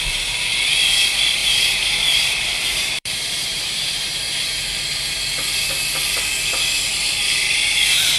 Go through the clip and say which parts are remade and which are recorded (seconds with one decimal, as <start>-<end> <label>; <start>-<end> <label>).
0.0-1.4 recorded; 1.4-4.2 remade; 4.2-8.2 recorded